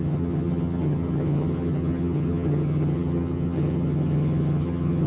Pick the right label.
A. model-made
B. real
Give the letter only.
A